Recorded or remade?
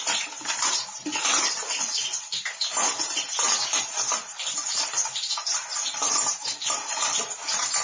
recorded